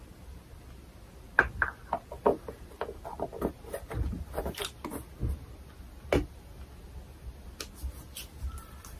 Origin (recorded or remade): recorded